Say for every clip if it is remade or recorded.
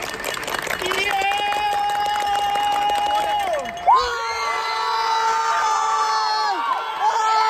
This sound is recorded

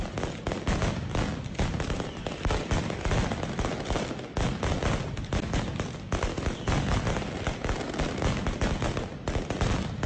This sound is recorded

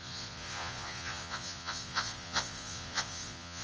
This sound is remade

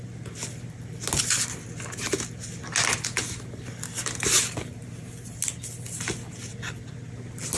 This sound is recorded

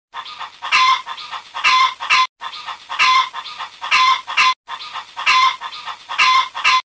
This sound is recorded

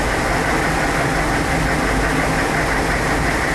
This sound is recorded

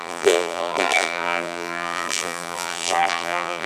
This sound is remade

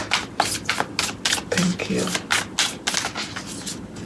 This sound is recorded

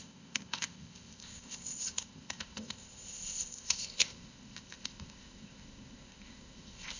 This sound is remade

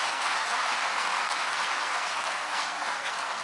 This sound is remade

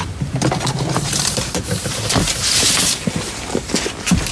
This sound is recorded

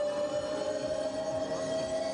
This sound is recorded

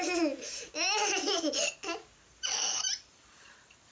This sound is recorded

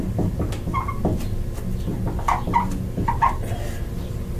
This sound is recorded